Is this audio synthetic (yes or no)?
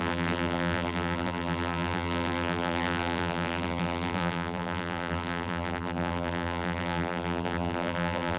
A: yes